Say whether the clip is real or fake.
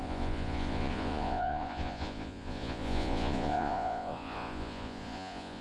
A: fake